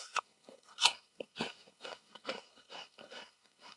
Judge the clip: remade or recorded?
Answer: remade